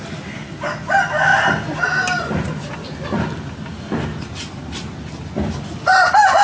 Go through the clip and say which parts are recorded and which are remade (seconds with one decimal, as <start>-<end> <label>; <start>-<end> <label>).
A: 0.0-6.4 recorded